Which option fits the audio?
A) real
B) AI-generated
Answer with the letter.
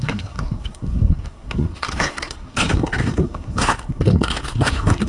B